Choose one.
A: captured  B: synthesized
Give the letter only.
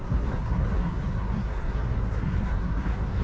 B